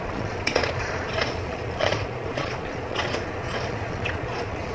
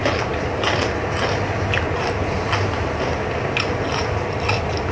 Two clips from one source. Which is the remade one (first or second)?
first